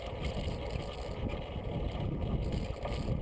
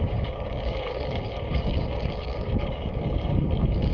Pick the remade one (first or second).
second